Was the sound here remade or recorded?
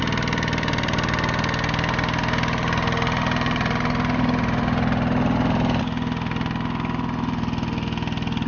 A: recorded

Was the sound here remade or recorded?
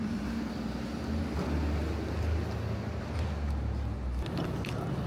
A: recorded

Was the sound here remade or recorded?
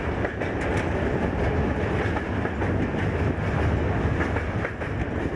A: recorded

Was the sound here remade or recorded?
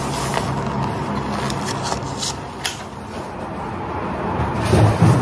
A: recorded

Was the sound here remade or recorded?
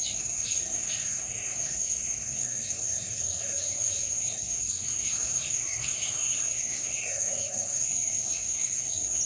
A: remade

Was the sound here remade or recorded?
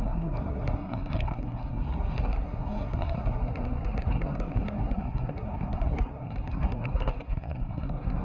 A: remade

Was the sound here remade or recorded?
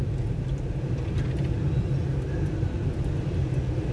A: recorded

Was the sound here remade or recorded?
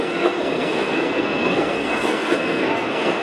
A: remade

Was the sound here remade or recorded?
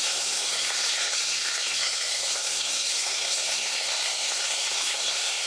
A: remade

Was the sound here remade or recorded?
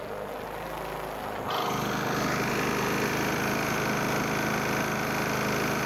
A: recorded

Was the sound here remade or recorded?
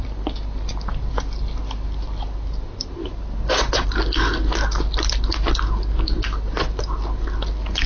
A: recorded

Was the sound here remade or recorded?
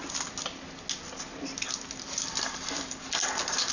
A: recorded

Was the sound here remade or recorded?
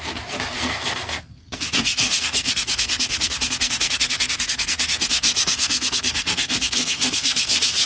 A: remade